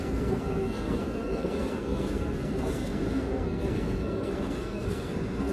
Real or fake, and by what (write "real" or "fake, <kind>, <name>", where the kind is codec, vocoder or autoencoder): fake, codec, SNAC